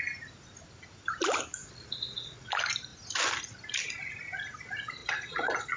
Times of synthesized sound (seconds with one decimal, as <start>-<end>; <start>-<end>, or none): 1.6-2.5; 5.0-5.8